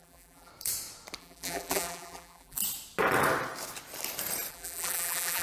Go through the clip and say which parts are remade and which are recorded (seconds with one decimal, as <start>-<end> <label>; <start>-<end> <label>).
0.0-0.5 remade; 0.5-1.2 recorded; 1.2-2.6 remade; 2.6-4.5 recorded; 4.5-5.4 remade